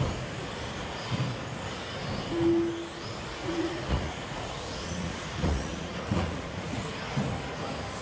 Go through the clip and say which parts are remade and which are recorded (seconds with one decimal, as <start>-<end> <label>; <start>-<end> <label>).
0.0-3.4 recorded; 3.4-6.8 remade; 6.8-8.0 recorded